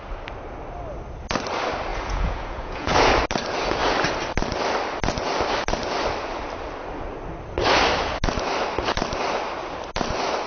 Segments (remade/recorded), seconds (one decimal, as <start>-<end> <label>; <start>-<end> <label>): 0.0-1.9 recorded; 1.9-3.2 remade; 3.2-10.5 recorded